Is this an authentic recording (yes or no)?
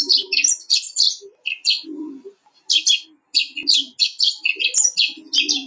yes